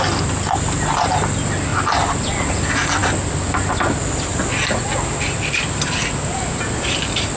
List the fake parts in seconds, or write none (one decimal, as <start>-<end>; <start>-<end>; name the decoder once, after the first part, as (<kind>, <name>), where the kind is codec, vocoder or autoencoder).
none